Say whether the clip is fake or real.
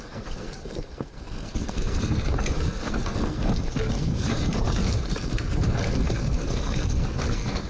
fake